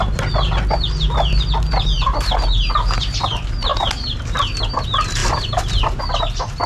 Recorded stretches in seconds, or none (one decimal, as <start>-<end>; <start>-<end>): 0.0-5.2; 6.0-6.7